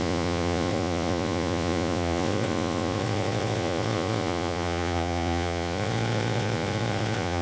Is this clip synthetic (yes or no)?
yes